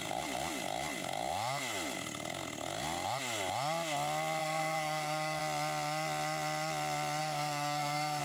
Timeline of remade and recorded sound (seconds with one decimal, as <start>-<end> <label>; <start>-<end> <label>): 0.0-4.4 recorded; 4.4-5.4 remade; 5.4-7.2 recorded; 7.2-8.2 remade

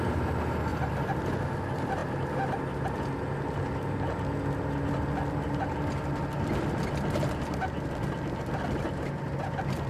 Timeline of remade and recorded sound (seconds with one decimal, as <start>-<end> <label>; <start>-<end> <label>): 0.0-9.9 recorded

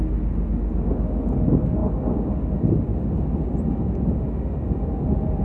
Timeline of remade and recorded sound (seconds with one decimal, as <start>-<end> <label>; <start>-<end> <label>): 0.0-5.4 recorded

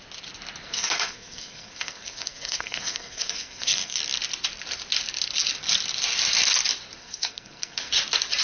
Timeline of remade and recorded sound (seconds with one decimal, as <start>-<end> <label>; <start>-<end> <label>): 0.0-0.6 recorded; 0.6-4.0 remade; 4.0-7.0 recorded; 7.0-7.9 remade; 7.9-8.4 recorded